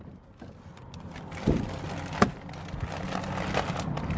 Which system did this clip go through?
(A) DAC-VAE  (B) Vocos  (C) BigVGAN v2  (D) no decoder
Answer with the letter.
D